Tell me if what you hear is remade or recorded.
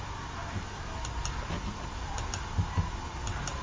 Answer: remade